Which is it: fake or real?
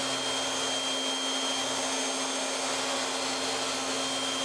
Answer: real